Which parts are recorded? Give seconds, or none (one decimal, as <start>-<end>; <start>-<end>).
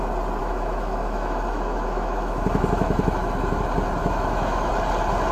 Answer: 0.0-0.4; 3.6-4.0; 4.7-5.3